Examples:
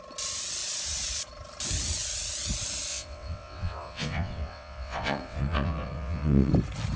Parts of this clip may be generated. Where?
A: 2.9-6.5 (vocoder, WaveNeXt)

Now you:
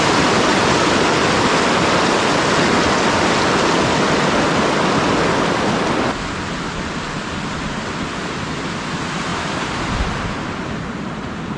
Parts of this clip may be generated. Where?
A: none

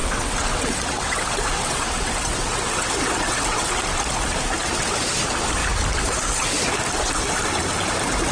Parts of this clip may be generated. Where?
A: 0.0-3.8 (vocoder, WaveNeXt)

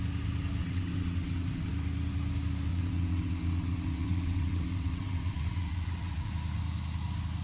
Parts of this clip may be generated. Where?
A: 0.6-1.7 (vocoder, WaveNeXt); 2.7-6.3

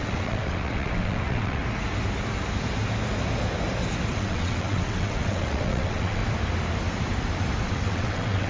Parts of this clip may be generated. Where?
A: 0.0-1.6 (vocoder, WaveNeXt); 4.1-6.2; 7.7-8.5